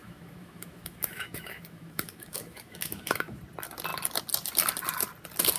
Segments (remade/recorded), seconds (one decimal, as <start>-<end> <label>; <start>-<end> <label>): 0.0-3.4 remade; 3.4-5.6 recorded